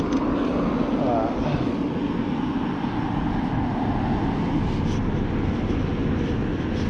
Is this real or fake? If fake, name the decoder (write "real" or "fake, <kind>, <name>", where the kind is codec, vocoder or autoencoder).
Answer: real